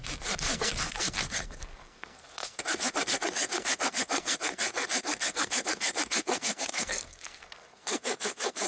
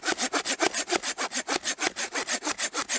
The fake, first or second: first